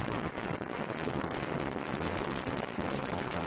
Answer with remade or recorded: remade